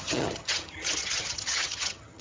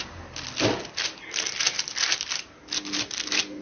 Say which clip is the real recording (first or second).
second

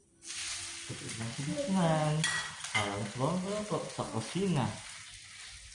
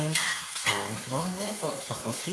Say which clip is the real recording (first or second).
first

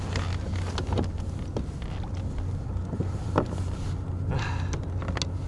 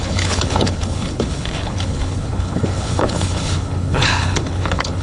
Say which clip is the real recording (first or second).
first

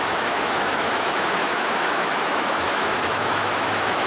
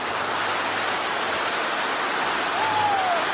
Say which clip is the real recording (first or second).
second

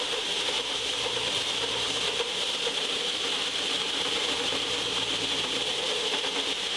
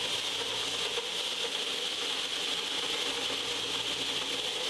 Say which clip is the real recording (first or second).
second